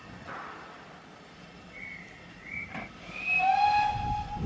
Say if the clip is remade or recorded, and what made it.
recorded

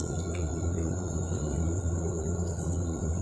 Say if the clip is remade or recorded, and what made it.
remade, vocoder, Vocos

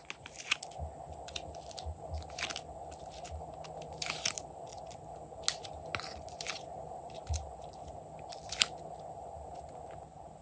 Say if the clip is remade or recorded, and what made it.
recorded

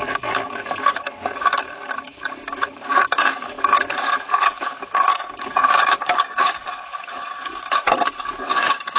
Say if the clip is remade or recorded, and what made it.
remade, codec, DAC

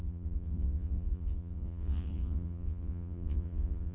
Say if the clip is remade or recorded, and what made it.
remade, vocoder, Vocos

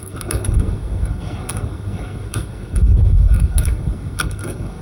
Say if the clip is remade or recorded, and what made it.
remade, codec, SNAC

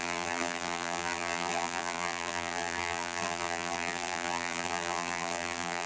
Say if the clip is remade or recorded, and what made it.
remade, vocoder, BigVGAN v2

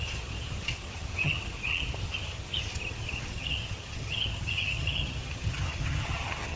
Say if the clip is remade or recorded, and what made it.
remade, vocoder, HiFi-GAN